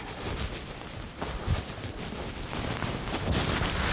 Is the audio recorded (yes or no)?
yes